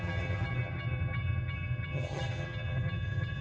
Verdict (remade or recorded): remade